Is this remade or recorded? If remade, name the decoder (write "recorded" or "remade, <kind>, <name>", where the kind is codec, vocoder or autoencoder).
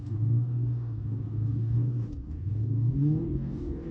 remade, codec, DAC